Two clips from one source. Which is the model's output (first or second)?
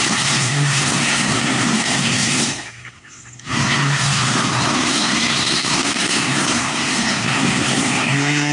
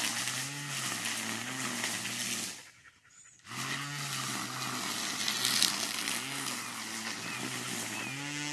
first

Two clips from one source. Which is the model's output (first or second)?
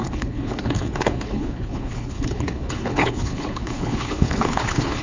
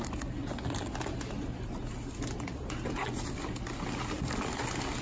first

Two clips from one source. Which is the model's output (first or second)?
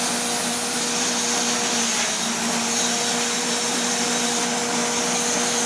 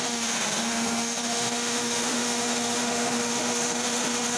second